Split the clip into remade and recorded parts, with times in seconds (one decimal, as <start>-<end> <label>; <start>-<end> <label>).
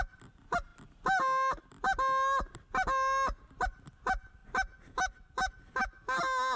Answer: 0.0-6.6 recorded